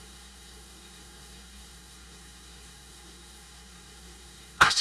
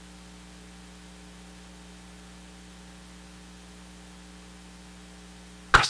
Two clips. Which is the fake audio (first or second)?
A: first